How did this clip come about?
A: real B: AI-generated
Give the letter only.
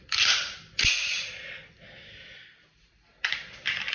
A